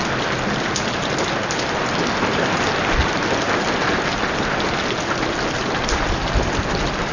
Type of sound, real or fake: real